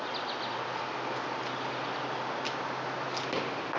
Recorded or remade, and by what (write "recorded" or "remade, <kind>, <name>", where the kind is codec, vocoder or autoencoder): recorded